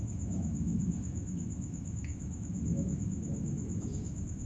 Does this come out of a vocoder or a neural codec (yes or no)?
yes